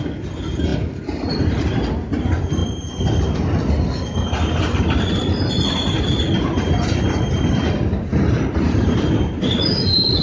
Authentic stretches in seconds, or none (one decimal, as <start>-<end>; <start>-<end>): 0.0-10.2